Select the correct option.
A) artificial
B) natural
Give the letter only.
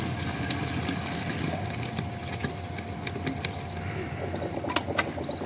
B